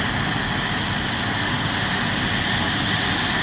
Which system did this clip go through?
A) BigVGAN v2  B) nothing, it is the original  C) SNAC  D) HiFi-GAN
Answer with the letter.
B